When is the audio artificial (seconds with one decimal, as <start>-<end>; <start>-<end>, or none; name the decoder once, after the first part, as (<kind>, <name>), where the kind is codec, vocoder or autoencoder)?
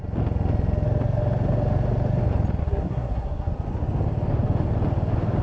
2.6-3.5 (codec, SNAC)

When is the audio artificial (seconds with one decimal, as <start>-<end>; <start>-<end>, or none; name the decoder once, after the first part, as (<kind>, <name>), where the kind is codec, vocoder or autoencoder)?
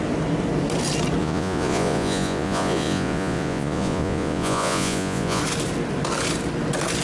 1.2-5.4 (vocoder, Vocos)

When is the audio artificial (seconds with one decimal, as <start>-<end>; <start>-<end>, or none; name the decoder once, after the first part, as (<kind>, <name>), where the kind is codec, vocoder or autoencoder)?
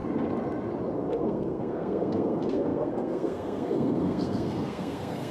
1.1-5.3 (codec, SNAC)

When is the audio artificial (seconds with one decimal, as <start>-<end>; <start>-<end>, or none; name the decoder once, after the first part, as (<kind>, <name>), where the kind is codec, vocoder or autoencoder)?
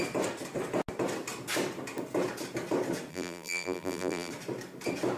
3.1-4.3 (vocoder, BigVGAN v2)